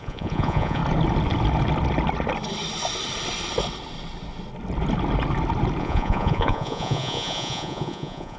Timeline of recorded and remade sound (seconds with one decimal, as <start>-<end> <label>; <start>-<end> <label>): 0.0-0.8 remade; 0.8-5.8 recorded; 5.8-8.4 remade

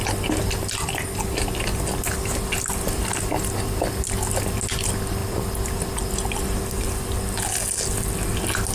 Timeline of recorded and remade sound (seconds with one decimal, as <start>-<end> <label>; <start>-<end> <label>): 0.0-8.7 recorded

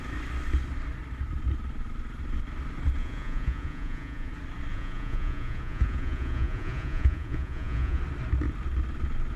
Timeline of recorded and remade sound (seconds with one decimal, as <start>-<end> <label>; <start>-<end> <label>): 0.0-3.0 recorded; 3.0-4.3 remade; 4.3-4.7 recorded; 4.7-8.0 remade; 8.0-9.4 recorded

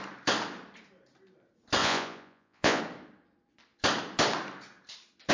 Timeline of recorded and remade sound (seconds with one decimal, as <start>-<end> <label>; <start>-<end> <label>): 0.0-1.8 recorded; 1.8-2.8 remade; 2.8-5.3 recorded

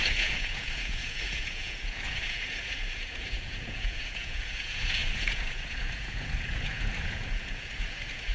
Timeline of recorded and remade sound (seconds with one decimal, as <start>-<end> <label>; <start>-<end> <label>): 0.0-8.3 remade

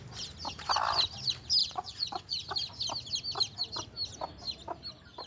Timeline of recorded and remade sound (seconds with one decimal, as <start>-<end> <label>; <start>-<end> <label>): 0.0-1.6 recorded; 1.6-2.5 remade; 2.5-5.3 recorded